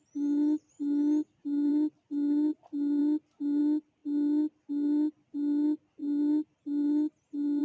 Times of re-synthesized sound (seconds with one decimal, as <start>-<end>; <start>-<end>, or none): none